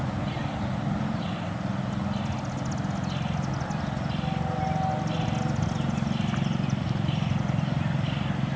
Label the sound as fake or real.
real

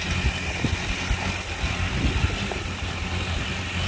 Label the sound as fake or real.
real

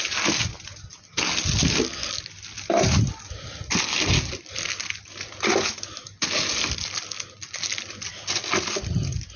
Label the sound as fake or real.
real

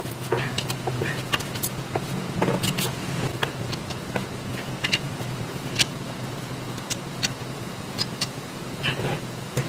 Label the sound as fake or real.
fake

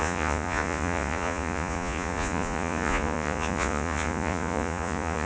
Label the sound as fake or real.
fake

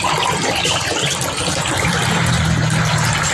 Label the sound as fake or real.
real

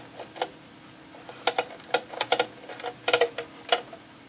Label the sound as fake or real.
real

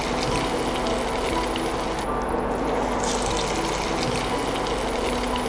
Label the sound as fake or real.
real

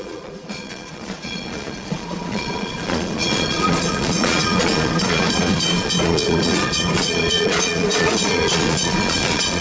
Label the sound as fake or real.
fake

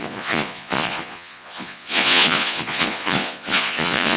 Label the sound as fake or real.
fake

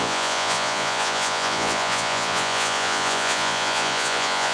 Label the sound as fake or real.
fake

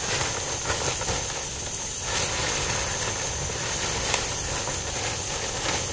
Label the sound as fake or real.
real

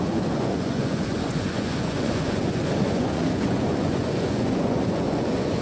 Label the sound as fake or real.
fake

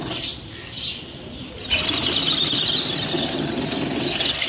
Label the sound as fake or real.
real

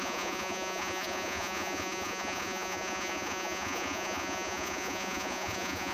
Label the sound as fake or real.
fake